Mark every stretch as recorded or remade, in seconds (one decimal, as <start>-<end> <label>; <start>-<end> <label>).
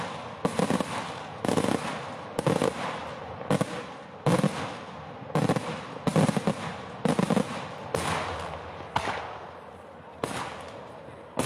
0.0-11.5 recorded